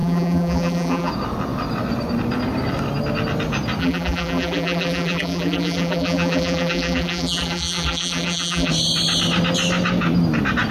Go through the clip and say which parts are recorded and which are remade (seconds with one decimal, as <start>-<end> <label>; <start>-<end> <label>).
0.0-1.1 remade; 1.1-3.8 recorded; 3.8-8.7 remade; 8.7-10.7 recorded